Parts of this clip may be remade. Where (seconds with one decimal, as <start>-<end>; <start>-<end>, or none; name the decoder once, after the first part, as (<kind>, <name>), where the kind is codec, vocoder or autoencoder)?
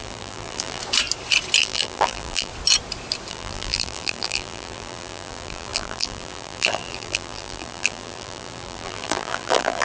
0.0-0.8 (vocoder, BigVGAN v2); 1.6-2.5; 3.3-9.8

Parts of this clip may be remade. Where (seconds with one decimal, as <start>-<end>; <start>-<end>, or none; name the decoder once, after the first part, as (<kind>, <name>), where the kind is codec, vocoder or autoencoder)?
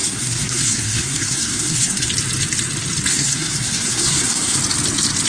0.0-2.1 (codec, SNAC); 3.1-4.6